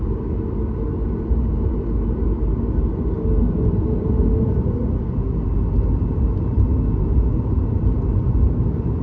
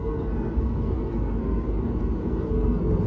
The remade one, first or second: second